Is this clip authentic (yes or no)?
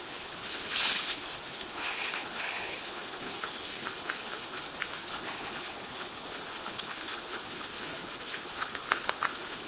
no